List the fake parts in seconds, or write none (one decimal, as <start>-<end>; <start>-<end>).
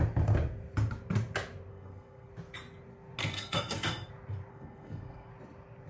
1.7-2.3; 3.2-4.1; 4.5-5.3